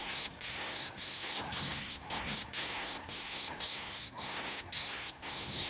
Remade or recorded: remade